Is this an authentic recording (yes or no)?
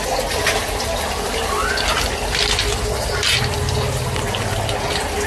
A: yes